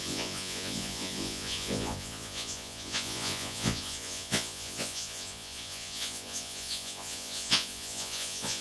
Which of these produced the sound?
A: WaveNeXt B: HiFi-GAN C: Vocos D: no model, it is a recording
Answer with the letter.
C